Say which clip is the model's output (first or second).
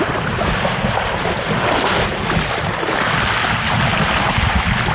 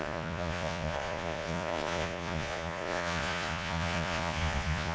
second